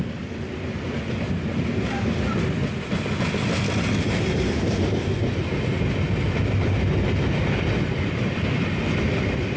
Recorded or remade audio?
recorded